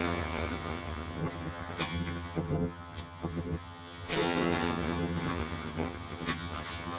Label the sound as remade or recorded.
remade